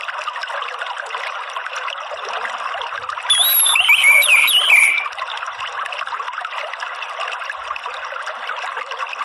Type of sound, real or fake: real